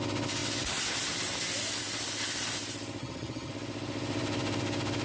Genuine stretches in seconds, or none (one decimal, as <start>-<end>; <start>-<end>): 0.0-3.0; 3.5-5.0